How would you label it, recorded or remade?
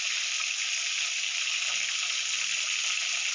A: recorded